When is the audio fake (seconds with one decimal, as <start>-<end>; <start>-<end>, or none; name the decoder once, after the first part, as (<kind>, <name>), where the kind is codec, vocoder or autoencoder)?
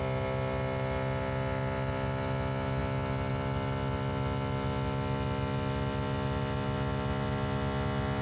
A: none